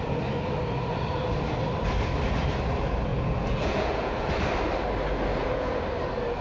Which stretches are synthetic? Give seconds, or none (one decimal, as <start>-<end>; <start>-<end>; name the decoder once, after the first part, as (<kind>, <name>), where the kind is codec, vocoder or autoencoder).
3.1-4.3 (vocoder, Vocos); 5.3-5.8